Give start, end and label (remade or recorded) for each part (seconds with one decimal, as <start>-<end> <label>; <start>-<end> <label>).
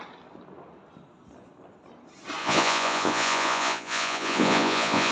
0.0-2.4 recorded; 2.4-5.1 remade